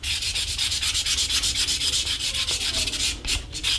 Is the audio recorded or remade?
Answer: recorded